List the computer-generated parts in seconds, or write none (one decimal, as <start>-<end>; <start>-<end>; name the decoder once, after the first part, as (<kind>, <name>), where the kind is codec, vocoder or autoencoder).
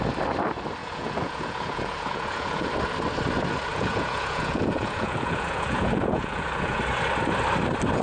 0.8-2.7 (vocoder, Vocos); 3.7-6.8